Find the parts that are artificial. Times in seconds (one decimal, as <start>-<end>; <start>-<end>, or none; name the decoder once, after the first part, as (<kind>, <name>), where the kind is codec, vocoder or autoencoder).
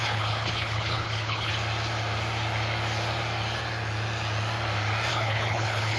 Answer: 0.0-1.5 (codec, HILCodec); 5.1-6.0